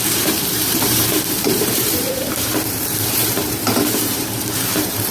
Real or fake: fake